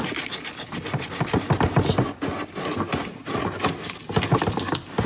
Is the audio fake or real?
real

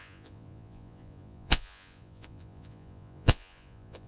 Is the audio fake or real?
fake